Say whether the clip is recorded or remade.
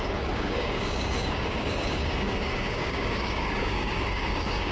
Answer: remade